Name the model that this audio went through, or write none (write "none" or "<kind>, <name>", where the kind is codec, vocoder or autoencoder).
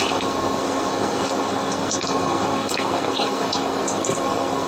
codec, SNAC